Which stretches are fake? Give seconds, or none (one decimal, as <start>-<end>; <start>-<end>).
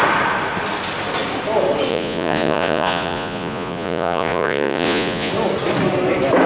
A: 1.9-5.3